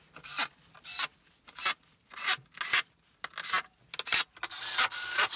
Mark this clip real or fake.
real